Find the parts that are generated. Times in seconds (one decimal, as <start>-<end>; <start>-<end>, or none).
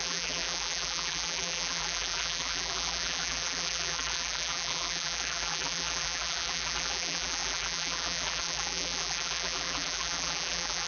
0.0-10.9